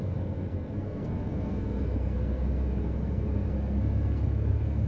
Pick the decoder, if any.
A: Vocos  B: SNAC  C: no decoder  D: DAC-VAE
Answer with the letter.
B